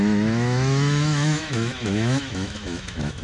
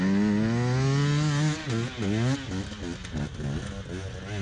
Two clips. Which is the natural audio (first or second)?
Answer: second